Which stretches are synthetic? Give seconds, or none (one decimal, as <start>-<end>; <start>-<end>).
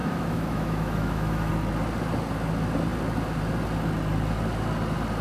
0.0-1.5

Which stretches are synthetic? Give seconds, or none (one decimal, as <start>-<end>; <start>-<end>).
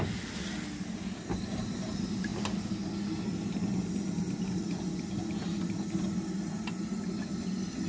none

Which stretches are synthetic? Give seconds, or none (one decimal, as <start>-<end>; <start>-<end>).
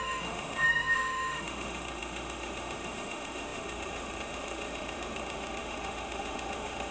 0.0-6.9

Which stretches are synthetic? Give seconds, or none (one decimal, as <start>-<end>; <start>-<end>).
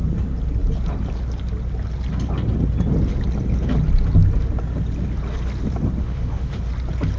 6.0-6.7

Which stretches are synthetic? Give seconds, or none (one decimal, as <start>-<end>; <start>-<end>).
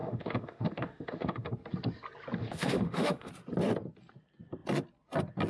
0.0-1.5; 2.4-3.3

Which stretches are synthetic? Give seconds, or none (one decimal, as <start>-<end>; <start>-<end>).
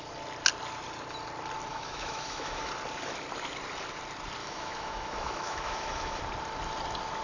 1.7-2.7; 4.4-6.2